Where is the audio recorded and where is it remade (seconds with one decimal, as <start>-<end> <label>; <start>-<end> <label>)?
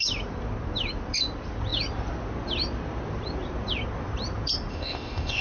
0.0-4.7 recorded; 4.7-5.4 remade